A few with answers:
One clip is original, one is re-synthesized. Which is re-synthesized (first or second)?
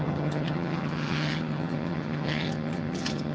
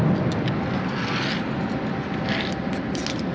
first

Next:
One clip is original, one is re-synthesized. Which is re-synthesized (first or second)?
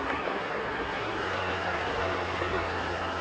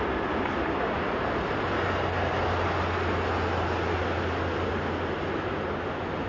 first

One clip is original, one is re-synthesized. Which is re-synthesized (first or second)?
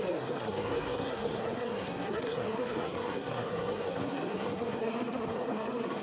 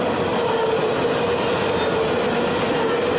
first